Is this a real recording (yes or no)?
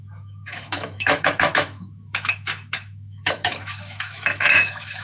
no